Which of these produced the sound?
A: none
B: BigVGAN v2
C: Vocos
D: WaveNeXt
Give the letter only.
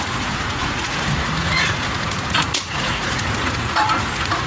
C